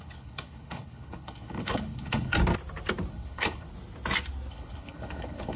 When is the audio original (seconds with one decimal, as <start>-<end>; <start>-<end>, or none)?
2.3-3.1; 3.7-4.5